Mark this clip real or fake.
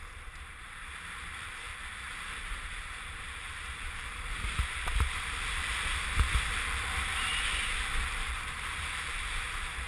fake